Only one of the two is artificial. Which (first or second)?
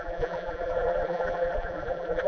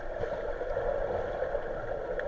first